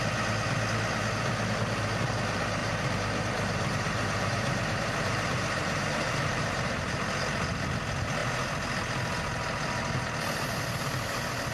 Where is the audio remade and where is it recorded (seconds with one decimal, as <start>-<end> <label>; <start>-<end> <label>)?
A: 0.0-2.6 recorded; 2.6-6.8 remade; 6.8-11.5 recorded